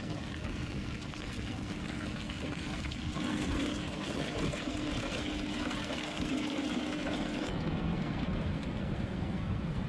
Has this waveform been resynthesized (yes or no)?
yes